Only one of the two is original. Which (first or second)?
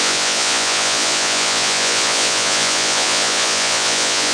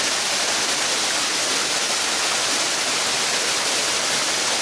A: second